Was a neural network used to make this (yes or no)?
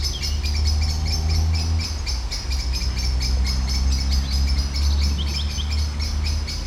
no